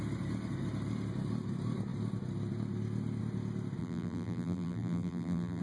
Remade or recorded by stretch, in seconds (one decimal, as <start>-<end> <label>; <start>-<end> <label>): 0.0-3.8 recorded; 3.8-5.6 remade